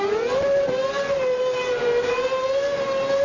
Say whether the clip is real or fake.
real